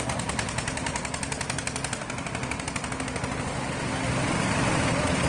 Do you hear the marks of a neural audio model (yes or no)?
no